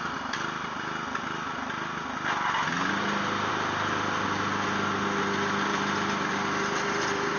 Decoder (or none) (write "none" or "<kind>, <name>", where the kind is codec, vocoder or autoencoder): none